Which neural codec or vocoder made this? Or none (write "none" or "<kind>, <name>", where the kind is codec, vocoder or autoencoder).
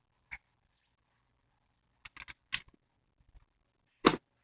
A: none